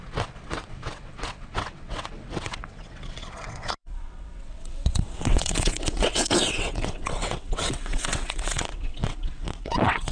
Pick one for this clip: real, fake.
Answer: fake